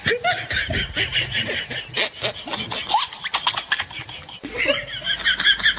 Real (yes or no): yes